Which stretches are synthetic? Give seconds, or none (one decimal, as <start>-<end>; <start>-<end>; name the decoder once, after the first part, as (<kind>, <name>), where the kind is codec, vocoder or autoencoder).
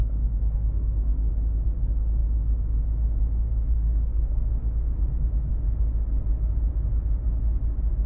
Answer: 0.0-1.3 (codec, SNAC); 3.7-4.7